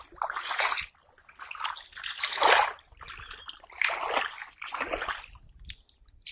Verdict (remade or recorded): recorded